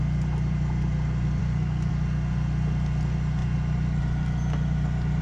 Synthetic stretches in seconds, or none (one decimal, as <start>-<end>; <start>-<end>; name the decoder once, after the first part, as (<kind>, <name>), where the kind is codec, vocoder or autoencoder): 1.4-1.9 (codec, SNAC)